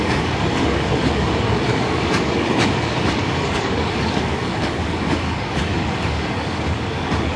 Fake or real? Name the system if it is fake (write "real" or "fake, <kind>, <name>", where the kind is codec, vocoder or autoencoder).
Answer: fake, codec, DAC